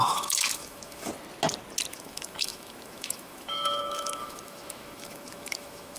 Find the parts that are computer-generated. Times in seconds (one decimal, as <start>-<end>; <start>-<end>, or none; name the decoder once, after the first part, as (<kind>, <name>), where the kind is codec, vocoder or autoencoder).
0.0-1.1 (autoencoder, DAC-VAE); 1.9-6.0